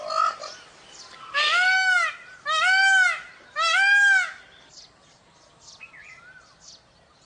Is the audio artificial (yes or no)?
no